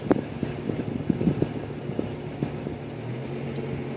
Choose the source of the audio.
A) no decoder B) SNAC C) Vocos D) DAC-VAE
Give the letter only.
A